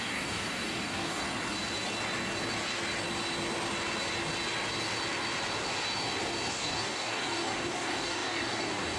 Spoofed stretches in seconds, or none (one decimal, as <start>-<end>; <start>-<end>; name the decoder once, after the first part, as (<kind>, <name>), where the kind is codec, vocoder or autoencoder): 0.0-1.2 (codec, DAC); 6.5-9.0